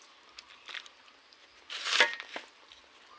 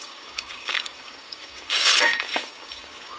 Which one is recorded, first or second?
first